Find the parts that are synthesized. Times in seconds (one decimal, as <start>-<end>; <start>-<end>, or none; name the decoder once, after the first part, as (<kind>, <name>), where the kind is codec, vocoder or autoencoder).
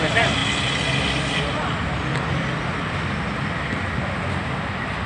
none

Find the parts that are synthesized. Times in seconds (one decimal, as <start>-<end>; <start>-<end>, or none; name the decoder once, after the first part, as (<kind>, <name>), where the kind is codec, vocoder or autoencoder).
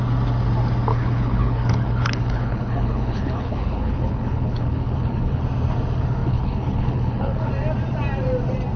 0.9-5.4 (codec, HILCodec); 6.2-7.5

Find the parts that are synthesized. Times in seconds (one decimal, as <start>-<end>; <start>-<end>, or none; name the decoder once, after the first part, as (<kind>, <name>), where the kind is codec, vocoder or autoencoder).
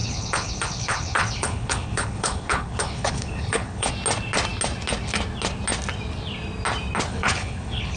0.0-3.9 (codec, HILCodec); 7.1-8.0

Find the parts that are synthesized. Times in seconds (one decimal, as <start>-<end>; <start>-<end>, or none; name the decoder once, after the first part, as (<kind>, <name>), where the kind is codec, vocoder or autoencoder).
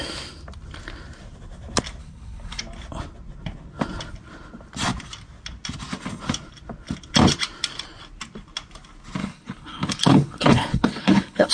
2.0-2.6 (codec, HILCodec); 9.2-11.5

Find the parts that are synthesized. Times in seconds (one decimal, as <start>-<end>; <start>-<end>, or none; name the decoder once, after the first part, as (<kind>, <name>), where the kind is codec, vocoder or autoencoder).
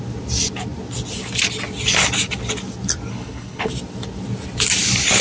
3.1-3.7 (codec, HILCodec)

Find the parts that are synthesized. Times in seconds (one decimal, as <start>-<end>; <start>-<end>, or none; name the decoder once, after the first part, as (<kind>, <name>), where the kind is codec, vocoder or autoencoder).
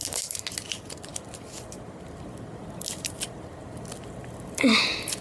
none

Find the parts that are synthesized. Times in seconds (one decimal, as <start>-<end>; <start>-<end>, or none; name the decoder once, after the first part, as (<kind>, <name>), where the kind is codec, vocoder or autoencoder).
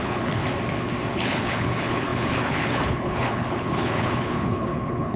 0.0-0.4 (codec, HILCodec); 1.1-5.2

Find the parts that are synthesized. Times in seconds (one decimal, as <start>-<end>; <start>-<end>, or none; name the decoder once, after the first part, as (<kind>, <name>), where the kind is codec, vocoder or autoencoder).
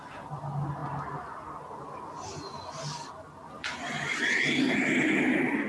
none